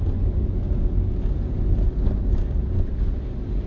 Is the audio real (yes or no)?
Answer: yes